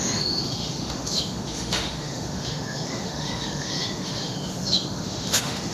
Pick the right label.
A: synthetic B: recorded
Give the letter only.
A